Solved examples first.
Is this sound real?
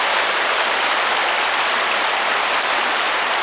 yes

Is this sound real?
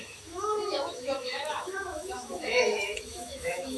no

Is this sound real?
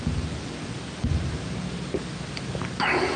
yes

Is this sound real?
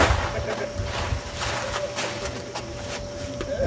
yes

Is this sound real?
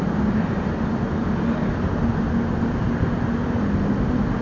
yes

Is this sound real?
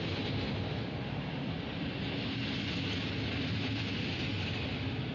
yes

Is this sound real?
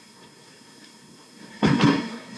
no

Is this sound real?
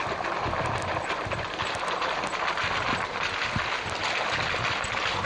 yes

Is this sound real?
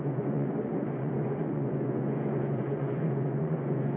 no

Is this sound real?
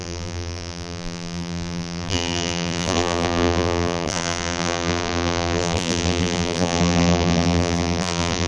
no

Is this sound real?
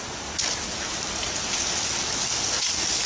yes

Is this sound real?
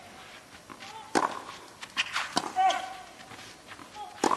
yes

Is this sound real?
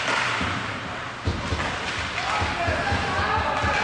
yes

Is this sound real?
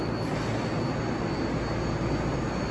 yes